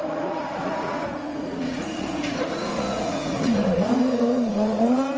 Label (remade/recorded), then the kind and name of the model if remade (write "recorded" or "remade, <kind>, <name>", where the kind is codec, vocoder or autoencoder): remade, vocoder, Vocos